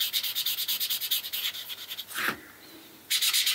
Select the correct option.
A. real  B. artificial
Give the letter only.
A